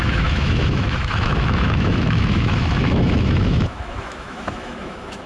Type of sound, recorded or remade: remade